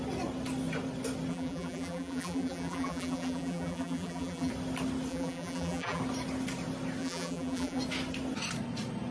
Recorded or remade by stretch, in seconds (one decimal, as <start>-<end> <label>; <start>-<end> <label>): 0.0-1.3 recorded; 1.3-4.5 remade; 4.5-5.1 recorded; 5.1-6.0 remade; 6.0-7.0 recorded; 7.0-7.8 remade; 7.8-9.1 recorded